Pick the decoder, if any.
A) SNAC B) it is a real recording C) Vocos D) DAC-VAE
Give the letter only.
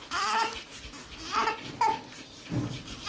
B